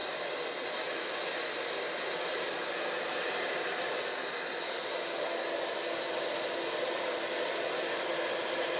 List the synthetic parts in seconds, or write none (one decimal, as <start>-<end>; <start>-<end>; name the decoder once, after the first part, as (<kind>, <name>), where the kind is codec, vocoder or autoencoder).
none